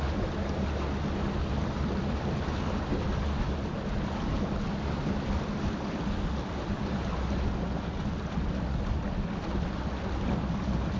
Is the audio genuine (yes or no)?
yes